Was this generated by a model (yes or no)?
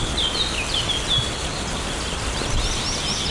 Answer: no